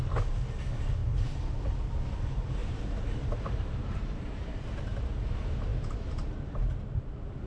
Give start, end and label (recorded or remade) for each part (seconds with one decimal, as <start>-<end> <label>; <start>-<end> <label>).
0.0-1.0 recorded; 1.0-1.6 remade; 1.6-2.6 recorded; 2.6-5.1 remade; 5.1-5.7 recorded; 5.7-6.5 remade; 6.5-7.5 recorded